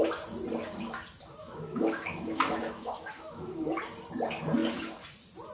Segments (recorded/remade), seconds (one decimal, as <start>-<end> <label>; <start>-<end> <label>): 0.0-1.4 recorded; 1.4-3.7 remade; 3.7-5.5 recorded